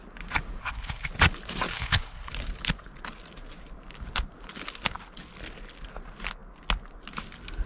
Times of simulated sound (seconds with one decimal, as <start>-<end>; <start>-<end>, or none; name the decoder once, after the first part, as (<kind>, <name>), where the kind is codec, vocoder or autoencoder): 0.6-1.1 (codec, HILCodec); 1.7-2.3